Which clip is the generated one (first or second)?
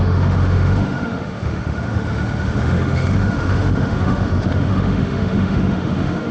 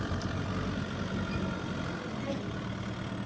first